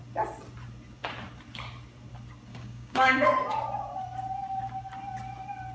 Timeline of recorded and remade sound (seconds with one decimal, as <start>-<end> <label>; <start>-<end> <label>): 0.0-2.5 recorded; 2.5-3.3 remade; 3.3-5.7 recorded